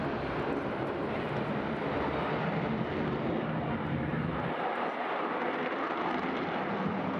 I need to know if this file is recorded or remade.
recorded